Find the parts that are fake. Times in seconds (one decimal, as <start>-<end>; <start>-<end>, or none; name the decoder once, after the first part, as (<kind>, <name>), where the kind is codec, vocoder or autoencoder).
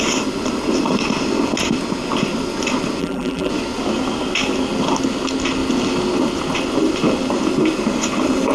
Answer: 3.0-3.5 (vocoder, BigVGAN v2)